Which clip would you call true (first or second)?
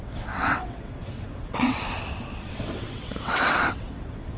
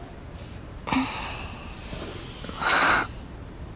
second